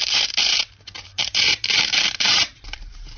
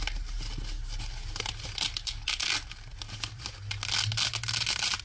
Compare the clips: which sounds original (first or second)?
second